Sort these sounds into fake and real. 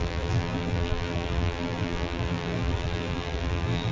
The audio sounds fake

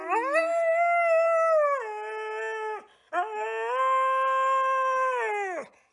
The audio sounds real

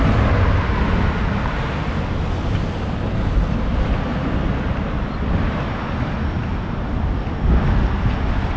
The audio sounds real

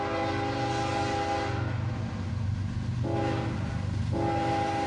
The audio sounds real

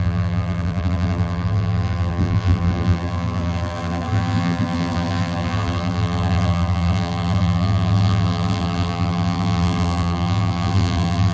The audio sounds fake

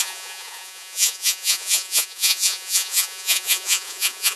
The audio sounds fake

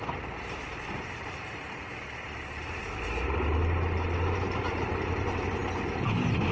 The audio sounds real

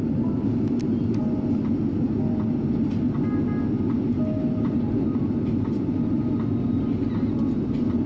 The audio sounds real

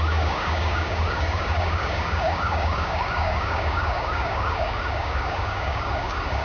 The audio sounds fake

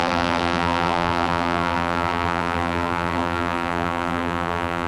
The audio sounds fake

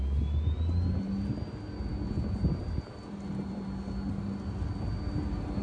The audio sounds real